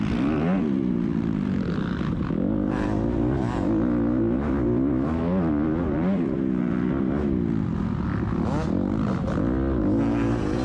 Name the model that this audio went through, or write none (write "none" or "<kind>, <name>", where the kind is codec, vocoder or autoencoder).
none